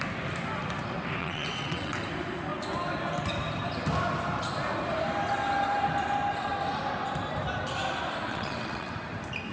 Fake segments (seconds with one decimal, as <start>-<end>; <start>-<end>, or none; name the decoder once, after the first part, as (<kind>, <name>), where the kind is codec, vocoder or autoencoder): 1.2-2.0 (vocoder, WaveNeXt); 8.3-8.9